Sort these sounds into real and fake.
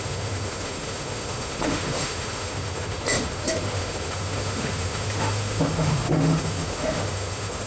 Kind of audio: fake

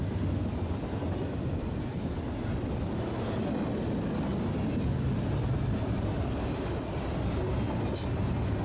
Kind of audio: real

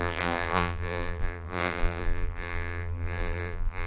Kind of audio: fake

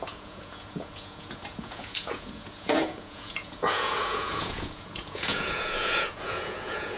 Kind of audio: fake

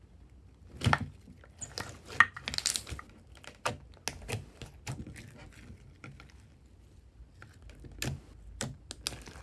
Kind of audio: real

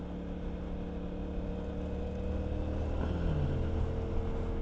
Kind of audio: real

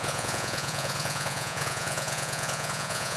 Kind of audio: fake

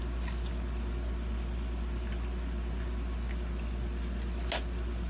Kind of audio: real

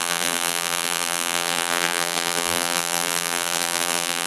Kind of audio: fake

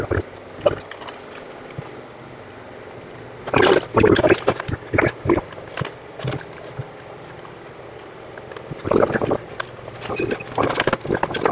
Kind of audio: real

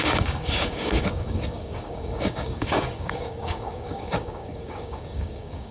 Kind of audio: fake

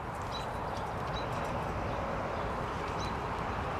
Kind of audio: real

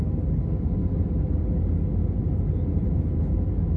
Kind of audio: real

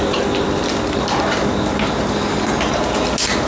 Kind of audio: real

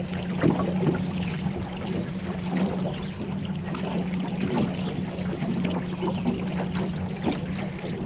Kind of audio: real